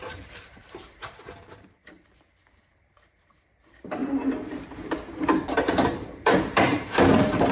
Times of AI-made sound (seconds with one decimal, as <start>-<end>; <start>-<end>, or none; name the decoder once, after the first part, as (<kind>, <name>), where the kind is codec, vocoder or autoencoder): 0.0-4.0 (vocoder, BigVGAN v2); 4.5-7.5